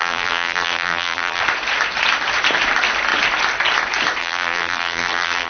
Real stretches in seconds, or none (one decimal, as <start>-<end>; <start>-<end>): 1.4-4.2

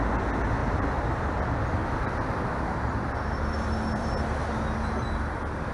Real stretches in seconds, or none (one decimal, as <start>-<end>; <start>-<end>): 0.0-0.6; 1.2-1.8; 4.2-5.7

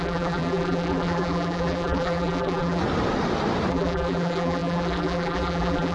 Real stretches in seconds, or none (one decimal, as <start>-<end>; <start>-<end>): 2.8-3.7

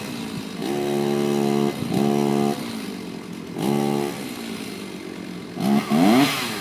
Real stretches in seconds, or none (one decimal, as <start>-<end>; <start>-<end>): 0.0-6.6

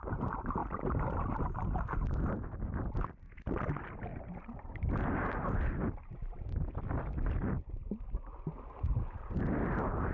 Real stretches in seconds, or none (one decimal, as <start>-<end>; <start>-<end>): 0.0-4.1; 6.2-10.1

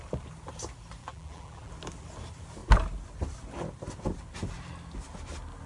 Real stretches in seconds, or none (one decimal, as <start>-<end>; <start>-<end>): 0.0-1.0; 1.7-5.7

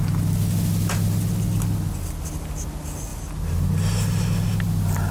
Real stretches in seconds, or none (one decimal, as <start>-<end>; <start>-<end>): 0.0-5.1

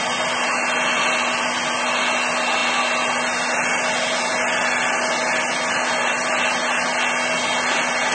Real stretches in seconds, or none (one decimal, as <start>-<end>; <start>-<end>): 0.0-8.1